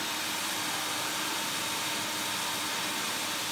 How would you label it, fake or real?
real